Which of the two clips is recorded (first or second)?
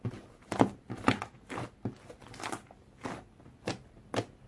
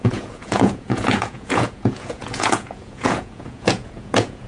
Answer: first